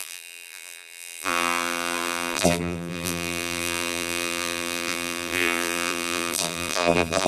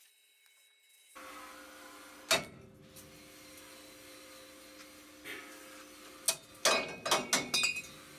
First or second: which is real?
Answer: second